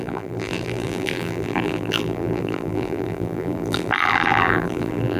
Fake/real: fake